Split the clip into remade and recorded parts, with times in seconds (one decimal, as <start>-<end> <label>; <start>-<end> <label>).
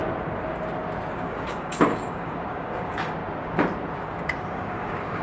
0.0-1.1 recorded; 1.1-3.2 remade; 3.2-4.0 recorded; 4.0-5.2 remade